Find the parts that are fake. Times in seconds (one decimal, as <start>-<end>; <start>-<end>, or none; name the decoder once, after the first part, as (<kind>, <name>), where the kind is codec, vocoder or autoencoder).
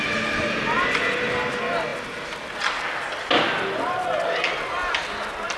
none